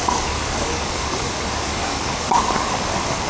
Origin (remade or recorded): remade